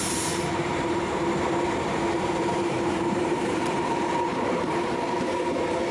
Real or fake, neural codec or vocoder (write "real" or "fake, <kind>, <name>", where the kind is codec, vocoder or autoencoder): fake, vocoder, BigVGAN v2